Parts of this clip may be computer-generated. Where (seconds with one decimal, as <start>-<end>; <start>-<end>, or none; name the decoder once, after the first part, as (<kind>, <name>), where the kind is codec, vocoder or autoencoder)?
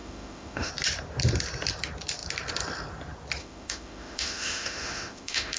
0.0-0.7 (autoencoder, DAC-VAE); 3.4-5.6